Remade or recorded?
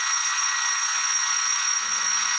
remade